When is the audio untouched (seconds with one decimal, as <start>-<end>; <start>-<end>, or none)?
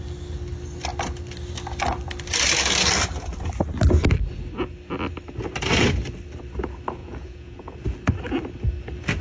0.0-7.0; 7.7-9.2